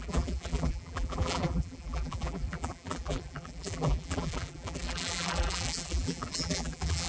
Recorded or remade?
remade